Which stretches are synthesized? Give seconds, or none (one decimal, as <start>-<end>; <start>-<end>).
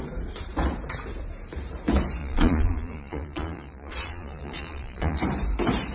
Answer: 2.2-5.2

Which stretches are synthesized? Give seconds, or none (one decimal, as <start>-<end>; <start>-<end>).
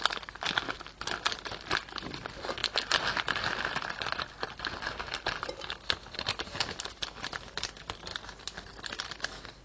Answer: none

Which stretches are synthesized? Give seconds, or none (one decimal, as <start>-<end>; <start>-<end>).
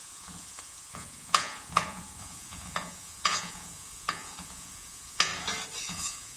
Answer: 0.0-5.3; 5.8-6.4